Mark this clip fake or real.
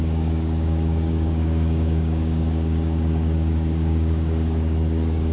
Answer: fake